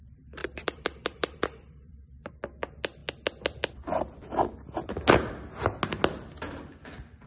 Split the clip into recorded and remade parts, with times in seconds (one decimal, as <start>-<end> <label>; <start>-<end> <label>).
0.0-0.4 recorded; 0.4-2.3 remade; 2.3-7.3 recorded